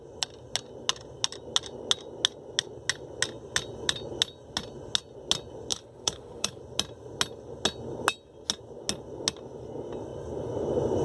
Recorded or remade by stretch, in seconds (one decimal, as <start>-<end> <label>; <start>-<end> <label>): 0.0-5.7 recorded; 5.7-6.6 remade; 6.6-11.0 recorded